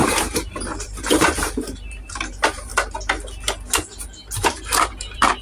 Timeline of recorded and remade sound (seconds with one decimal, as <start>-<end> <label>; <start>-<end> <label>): 0.0-2.7 remade; 2.7-4.3 recorded; 4.3-5.4 remade